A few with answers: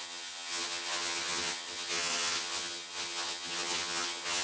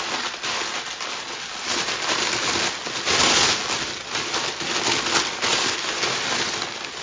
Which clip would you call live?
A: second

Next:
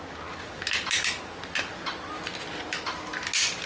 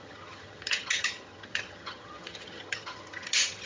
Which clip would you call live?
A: first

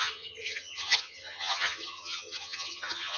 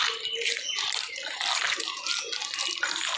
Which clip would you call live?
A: second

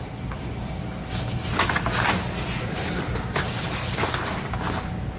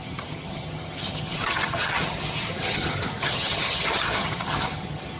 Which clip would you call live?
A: first